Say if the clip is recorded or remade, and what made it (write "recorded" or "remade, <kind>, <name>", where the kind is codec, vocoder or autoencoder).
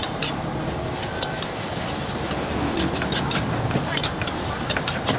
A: recorded